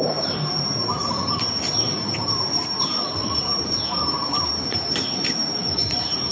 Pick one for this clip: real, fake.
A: fake